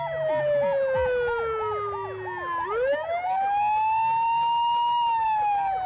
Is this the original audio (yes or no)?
yes